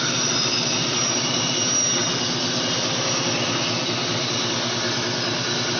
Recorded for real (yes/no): yes